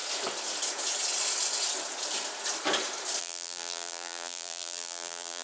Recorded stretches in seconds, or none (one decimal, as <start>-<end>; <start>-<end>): 0.0-3.2